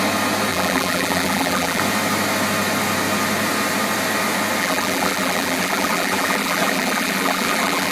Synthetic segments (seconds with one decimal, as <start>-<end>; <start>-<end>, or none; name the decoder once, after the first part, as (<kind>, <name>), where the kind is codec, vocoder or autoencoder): 0.5-1.8 (vocoder, BigVGAN v2); 4.6-7.9